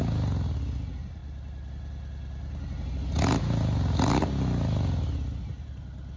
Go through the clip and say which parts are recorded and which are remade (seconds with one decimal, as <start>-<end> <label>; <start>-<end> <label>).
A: 0.0-1.2 recorded; 1.2-1.7 remade; 1.7-6.2 recorded